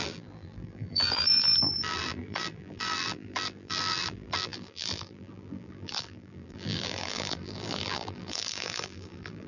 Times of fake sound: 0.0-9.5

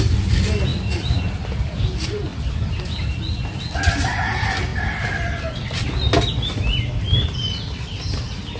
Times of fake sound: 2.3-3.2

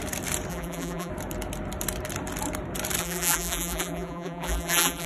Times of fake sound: 0.5-1.1; 3.0-5.1